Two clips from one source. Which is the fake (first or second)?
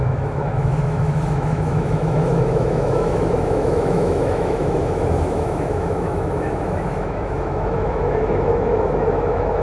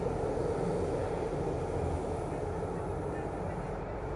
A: first